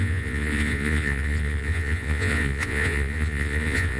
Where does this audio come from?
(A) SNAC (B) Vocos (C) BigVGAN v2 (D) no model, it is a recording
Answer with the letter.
B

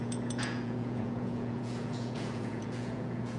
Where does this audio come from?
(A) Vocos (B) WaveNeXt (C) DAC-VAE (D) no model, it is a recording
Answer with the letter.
A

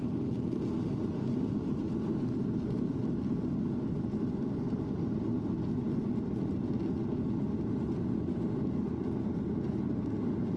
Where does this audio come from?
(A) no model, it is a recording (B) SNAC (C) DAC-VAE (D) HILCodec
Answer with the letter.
A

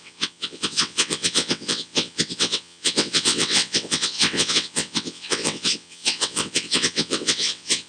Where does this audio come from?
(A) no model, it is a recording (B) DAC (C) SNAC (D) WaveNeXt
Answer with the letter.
D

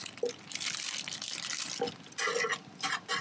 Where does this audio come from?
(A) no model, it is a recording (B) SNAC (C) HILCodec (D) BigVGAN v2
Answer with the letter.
A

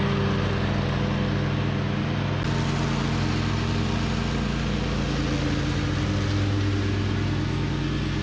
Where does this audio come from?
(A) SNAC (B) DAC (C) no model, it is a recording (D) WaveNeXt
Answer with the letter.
C